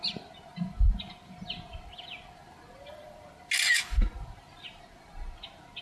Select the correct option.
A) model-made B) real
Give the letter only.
B